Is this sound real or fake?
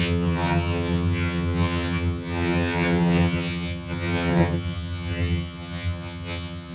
fake